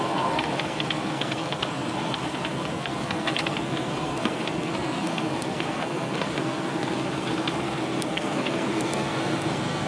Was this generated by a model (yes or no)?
yes